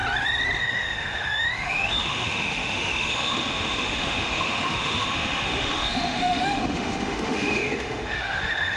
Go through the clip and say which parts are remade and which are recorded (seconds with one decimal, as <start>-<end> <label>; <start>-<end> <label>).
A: 0.0-0.6 recorded; 0.6-8.8 remade